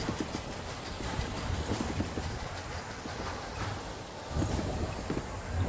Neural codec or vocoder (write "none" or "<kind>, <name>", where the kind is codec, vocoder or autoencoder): none